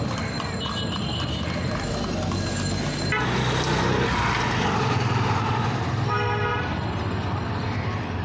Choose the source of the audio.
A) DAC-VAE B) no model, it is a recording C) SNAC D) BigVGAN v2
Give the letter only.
B